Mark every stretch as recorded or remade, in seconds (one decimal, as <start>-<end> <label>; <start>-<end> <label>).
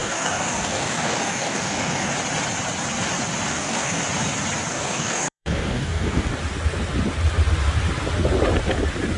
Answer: 0.0-2.1 remade; 2.1-3.5 recorded; 3.5-4.0 remade; 4.0-4.7 recorded; 4.7-6.3 remade; 6.3-9.2 recorded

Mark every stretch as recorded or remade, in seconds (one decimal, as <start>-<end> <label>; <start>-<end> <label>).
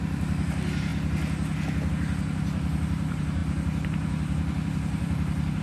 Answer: 0.0-0.9 remade; 0.9-1.9 recorded; 1.9-5.6 remade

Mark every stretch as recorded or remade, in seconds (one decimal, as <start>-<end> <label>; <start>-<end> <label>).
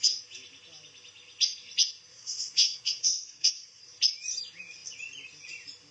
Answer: 0.0-2.1 recorded; 2.1-3.8 remade; 3.8-5.9 recorded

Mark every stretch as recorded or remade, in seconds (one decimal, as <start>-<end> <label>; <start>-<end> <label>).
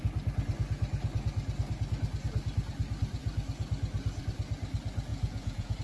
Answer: 0.0-5.1 recorded; 5.1-5.8 remade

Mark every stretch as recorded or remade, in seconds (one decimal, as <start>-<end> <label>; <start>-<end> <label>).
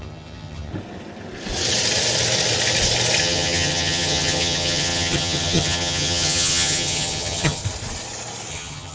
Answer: 0.0-0.7 remade; 0.7-3.2 recorded; 3.2-7.6 remade; 7.6-8.5 recorded; 8.5-8.9 remade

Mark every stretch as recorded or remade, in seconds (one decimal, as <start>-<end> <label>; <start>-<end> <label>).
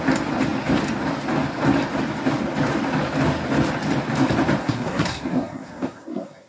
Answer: 0.0-4.6 recorded; 4.6-6.5 remade